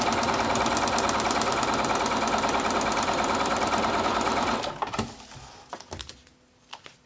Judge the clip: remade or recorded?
recorded